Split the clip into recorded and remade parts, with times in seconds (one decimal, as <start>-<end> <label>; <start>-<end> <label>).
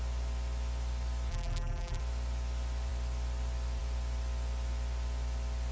0.0-1.3 recorded; 1.3-2.0 remade; 2.0-5.7 recorded